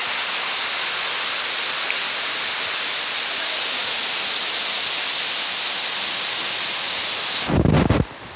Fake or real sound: real